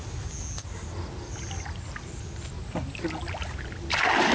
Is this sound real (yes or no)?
yes